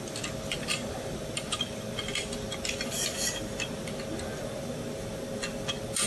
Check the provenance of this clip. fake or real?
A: real